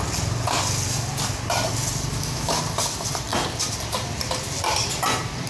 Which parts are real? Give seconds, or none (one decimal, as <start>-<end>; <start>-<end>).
0.0-2.1; 2.6-5.5